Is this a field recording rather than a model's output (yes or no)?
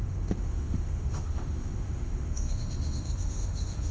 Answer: no